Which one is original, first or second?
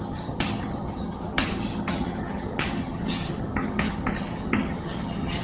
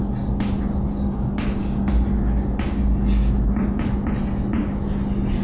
second